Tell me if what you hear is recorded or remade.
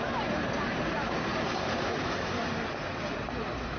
remade